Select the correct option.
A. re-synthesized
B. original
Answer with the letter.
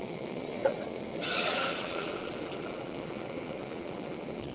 A